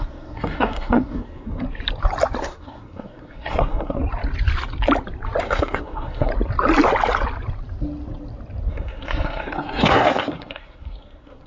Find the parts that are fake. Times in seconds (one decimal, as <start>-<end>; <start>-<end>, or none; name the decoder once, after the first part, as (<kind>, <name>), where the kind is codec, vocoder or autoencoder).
0.0-1.6 (codec, SNAC); 2.4-4.0; 5.4-6.3; 8.7-11.5